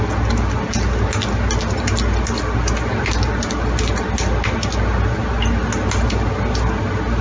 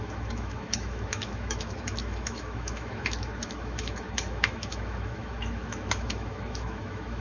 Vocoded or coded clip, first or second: second